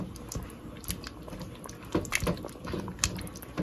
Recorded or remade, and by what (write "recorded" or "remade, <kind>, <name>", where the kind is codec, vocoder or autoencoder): recorded